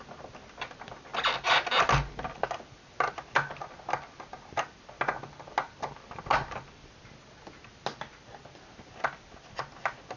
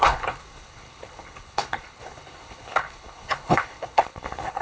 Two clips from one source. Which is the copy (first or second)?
second